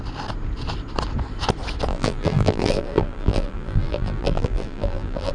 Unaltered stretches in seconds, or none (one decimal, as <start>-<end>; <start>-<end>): 0.0-1.9